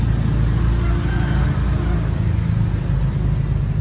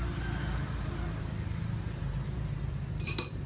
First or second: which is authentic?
first